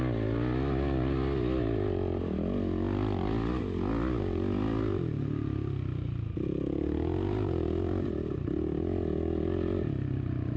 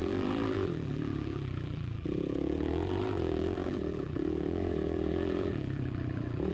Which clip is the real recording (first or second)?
first